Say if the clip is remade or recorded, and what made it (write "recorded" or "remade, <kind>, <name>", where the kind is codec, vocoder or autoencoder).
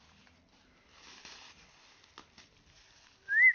recorded